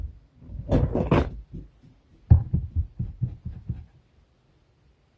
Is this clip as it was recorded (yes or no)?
yes